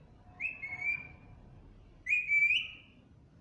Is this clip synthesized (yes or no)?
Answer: yes